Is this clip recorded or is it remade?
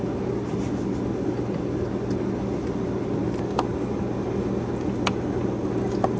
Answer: recorded